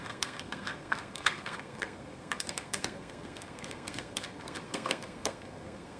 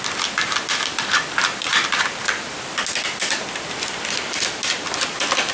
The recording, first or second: second